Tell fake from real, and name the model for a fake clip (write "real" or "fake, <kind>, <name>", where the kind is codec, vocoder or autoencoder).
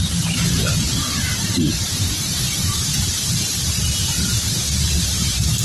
fake, vocoder, BigVGAN v2